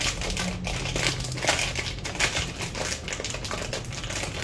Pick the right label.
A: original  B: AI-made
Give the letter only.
A